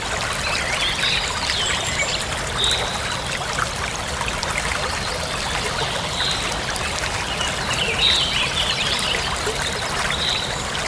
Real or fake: real